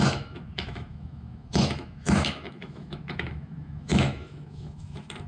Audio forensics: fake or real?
fake